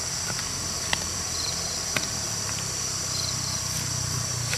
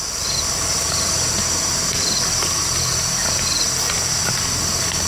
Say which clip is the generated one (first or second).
first